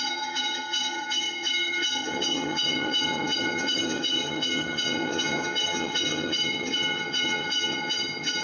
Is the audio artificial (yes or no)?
yes